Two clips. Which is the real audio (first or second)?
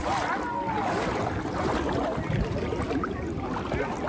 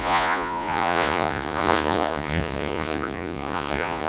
first